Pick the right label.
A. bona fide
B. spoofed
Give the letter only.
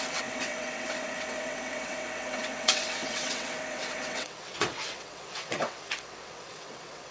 B